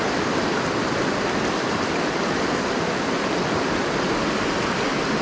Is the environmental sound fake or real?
real